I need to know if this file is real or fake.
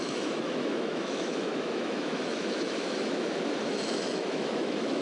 fake